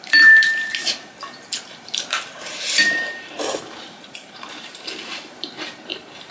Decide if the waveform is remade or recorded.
remade